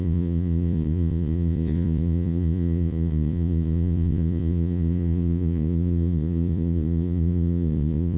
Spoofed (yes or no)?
yes